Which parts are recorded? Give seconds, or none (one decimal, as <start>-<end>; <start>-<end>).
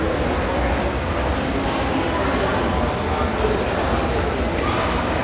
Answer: 0.0-5.2